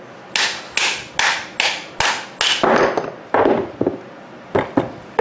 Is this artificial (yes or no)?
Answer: no